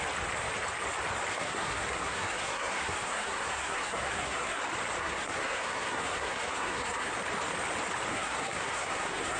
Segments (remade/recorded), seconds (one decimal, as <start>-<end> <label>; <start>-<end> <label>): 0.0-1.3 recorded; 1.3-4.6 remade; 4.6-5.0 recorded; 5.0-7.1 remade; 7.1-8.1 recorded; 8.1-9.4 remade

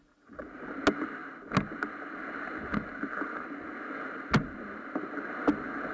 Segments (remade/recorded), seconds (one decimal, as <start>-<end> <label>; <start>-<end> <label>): 0.0-0.6 remade; 0.6-5.9 recorded

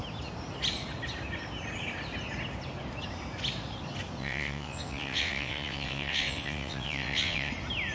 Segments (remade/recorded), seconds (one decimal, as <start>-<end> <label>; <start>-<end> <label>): 0.0-4.2 recorded; 4.2-7.5 remade; 7.5-7.9 recorded